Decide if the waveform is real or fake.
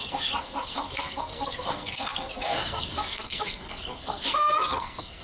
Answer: fake